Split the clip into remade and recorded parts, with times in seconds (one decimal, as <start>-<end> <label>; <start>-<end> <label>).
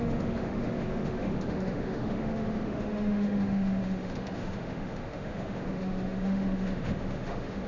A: 0.0-7.7 remade